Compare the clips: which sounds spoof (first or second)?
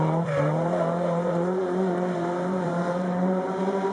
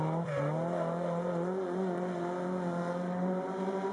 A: first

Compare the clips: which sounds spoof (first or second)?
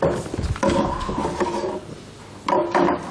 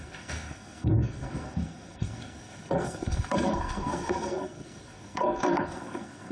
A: second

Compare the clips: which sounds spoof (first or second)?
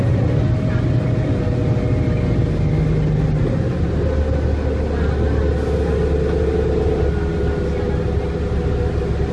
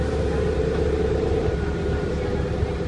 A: second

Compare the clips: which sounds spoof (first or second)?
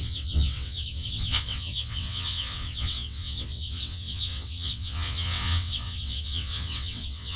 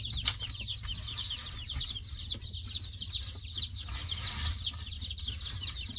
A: first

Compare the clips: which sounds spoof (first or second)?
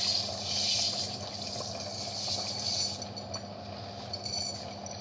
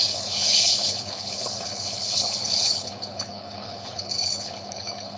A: second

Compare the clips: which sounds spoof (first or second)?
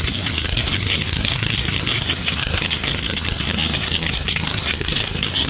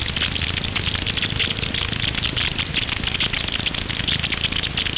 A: first